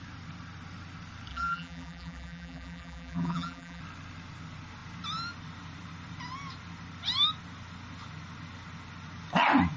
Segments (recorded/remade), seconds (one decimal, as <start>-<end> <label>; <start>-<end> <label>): 0.0-1.3 recorded; 1.3-3.8 remade; 3.8-9.8 recorded